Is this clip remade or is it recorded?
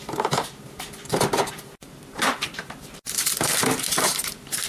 remade